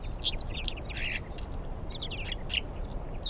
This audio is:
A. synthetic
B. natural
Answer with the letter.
B